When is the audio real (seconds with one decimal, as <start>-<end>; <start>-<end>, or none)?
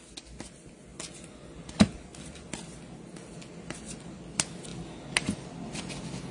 0.0-6.3